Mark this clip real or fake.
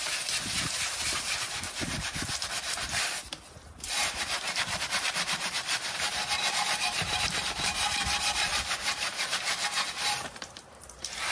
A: fake